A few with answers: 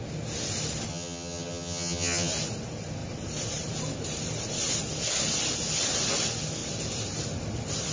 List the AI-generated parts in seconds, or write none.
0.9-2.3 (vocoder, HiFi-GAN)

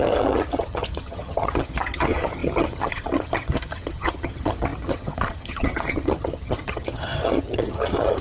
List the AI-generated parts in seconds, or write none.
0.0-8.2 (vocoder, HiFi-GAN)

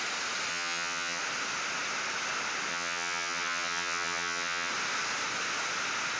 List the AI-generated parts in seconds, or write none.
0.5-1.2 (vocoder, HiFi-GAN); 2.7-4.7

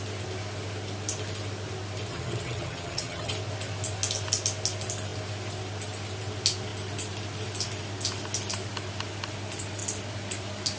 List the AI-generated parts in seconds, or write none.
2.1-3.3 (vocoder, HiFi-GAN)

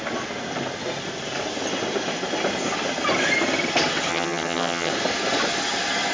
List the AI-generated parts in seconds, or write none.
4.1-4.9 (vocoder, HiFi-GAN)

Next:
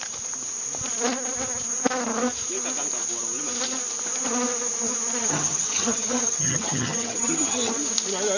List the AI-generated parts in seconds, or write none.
5.2-7.7 (vocoder, HiFi-GAN)